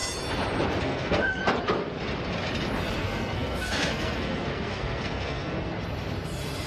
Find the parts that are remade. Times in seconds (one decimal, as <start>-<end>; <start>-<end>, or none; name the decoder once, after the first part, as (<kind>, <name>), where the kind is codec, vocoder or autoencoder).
0.8-1.4 (codec, SNAC); 3.0-5.7